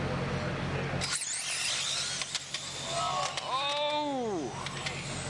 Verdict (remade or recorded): recorded